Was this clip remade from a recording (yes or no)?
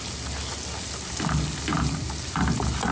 no